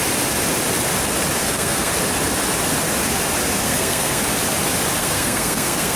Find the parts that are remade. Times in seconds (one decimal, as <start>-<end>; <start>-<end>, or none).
1.4-1.9; 3.6-4.2; 5.0-6.0